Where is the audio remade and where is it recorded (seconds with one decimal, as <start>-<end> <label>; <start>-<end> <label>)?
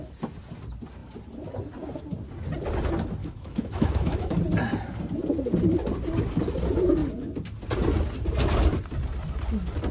0.0-3.2 recorded; 3.2-4.4 remade; 4.4-9.9 recorded